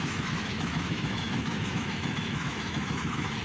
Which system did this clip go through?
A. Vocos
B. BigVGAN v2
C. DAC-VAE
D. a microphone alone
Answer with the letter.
C